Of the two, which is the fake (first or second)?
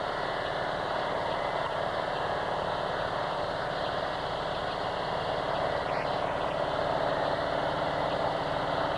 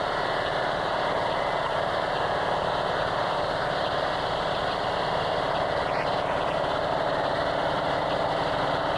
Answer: second